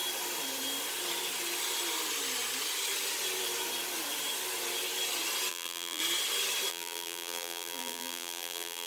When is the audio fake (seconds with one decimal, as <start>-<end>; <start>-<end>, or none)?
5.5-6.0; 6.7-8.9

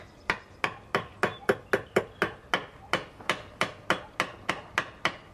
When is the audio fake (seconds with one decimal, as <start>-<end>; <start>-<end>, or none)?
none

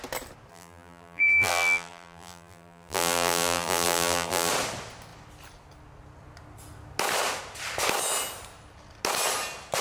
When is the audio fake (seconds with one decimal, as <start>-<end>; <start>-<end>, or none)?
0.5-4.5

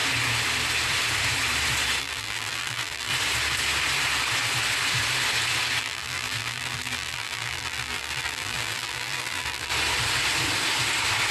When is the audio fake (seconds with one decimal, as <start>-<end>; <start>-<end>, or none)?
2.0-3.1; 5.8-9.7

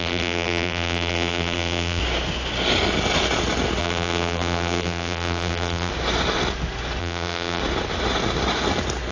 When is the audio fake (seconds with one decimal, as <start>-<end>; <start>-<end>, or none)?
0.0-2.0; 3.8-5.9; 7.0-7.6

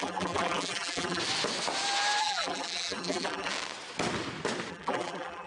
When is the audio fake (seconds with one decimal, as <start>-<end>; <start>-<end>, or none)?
0.0-1.2; 2.2-3.5; 4.7-5.5